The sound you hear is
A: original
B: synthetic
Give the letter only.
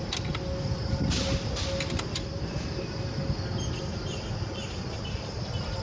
A